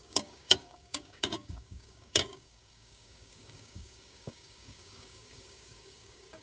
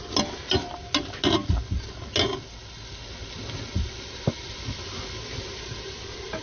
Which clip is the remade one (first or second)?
first